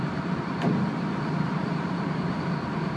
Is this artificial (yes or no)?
no